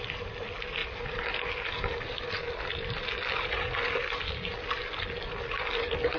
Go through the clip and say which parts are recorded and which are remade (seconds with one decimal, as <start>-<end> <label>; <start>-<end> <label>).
0.0-6.2 recorded